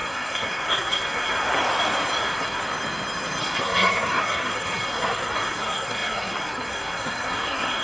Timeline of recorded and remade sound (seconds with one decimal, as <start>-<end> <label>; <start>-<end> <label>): 0.0-1.6 remade; 1.6-2.2 recorded; 2.2-2.6 remade; 2.6-3.4 recorded; 3.4-7.8 remade

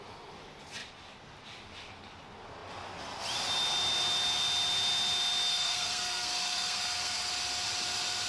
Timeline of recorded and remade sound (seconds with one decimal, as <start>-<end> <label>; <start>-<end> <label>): 0.0-5.5 recorded; 5.5-7.3 remade; 7.3-8.3 recorded

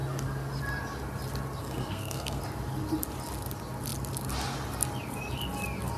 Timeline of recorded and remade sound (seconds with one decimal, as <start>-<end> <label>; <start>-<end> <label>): 0.0-1.6 recorded; 1.6-2.4 remade; 2.4-6.0 recorded

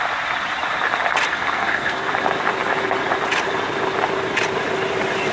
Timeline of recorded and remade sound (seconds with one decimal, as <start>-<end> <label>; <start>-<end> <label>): 0.0-1.3 recorded; 1.3-2.1 remade; 2.1-5.3 recorded

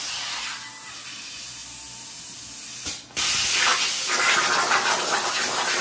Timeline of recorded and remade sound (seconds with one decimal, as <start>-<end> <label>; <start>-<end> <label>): 0.0-5.8 recorded

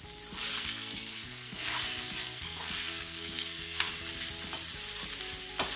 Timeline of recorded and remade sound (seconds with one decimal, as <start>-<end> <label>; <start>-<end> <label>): 0.0-0.5 recorded; 0.5-3.9 remade; 3.9-5.8 recorded

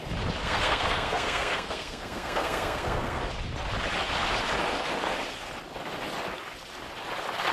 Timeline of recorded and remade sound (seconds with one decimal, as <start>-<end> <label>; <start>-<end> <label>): 0.0-0.4 recorded; 0.4-3.2 remade; 3.2-7.5 recorded